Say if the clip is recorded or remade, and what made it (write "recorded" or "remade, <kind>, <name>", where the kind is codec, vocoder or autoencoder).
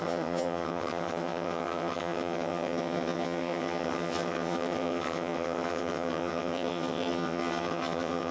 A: remade, vocoder, HiFi-GAN